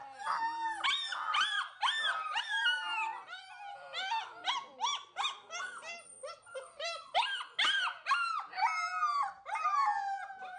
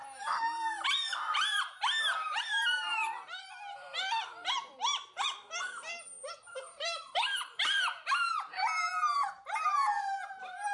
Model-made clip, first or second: second